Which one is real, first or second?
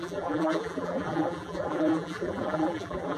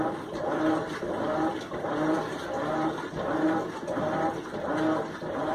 second